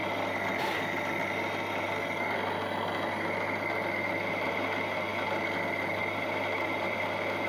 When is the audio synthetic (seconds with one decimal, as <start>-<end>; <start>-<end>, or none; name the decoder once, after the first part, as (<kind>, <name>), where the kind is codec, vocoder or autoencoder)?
4.5-5.1 (vocoder, BigVGAN v2); 6.0-7.5